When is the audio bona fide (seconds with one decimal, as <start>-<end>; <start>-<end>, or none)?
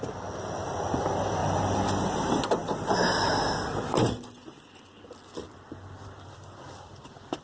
0.0-1.4; 2.0-2.6; 7.0-7.4